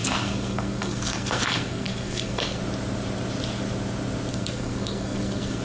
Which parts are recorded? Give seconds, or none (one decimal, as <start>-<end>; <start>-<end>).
2.6-4.3